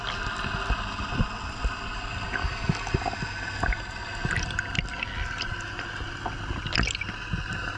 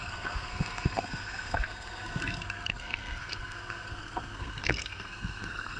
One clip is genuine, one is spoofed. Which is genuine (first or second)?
first